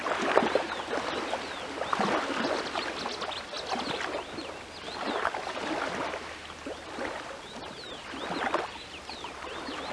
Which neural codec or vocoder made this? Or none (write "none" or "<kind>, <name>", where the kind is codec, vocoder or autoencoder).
none